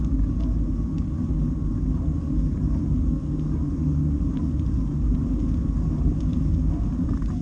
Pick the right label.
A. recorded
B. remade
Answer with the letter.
A